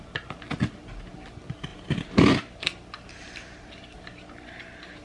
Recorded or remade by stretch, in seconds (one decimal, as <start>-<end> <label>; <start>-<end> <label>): 0.0-5.0 recorded

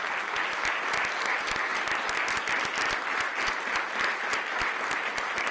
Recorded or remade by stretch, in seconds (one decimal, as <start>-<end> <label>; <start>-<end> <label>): 0.0-5.5 recorded